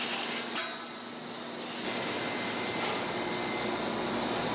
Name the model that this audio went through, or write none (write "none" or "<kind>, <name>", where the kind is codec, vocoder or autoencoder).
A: none